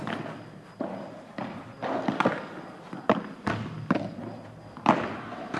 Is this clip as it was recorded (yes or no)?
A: yes